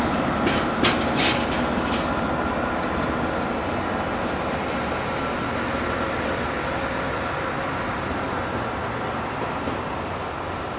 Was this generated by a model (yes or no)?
no